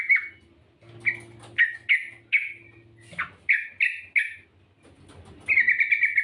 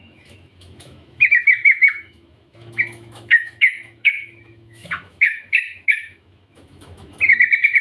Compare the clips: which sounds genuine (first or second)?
first